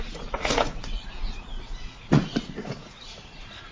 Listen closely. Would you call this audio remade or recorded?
remade